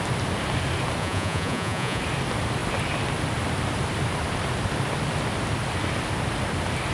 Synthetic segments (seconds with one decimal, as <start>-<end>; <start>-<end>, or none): 1.0-2.0